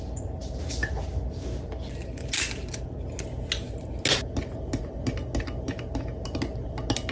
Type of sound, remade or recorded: recorded